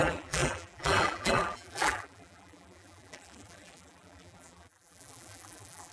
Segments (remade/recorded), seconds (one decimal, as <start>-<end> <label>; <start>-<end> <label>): 0.0-5.9 remade